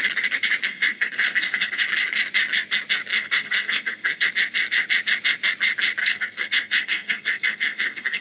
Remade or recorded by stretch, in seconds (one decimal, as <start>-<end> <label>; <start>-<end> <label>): 0.0-0.6 recorded; 0.6-1.8 remade; 1.8-3.1 recorded; 3.1-4.3 remade; 4.3-6.0 recorded; 6.0-8.2 remade